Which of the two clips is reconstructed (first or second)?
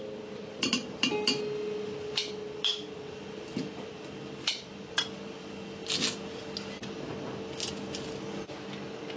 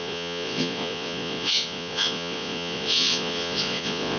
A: second